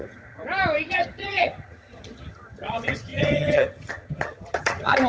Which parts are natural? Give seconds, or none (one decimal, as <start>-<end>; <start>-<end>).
0.4-0.9